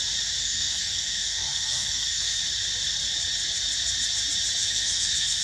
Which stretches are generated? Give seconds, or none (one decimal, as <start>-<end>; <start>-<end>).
0.4-2.4; 4.6-5.4

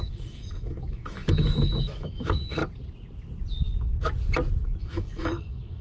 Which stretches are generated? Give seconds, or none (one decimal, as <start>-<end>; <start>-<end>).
0.0-2.6; 4.8-5.8